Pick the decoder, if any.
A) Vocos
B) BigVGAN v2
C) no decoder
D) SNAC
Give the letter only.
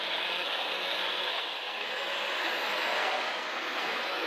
D